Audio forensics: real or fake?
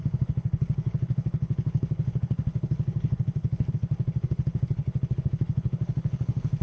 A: fake